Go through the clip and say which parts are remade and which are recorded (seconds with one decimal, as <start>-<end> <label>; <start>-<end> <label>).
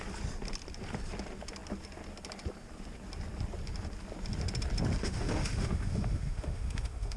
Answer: 0.0-5.0 recorded; 5.0-7.2 remade